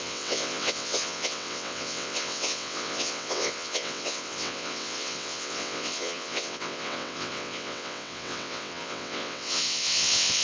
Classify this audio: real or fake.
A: fake